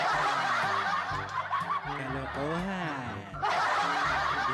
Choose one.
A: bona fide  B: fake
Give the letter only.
A